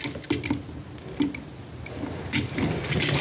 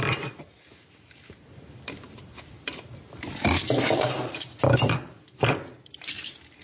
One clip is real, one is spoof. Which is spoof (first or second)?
second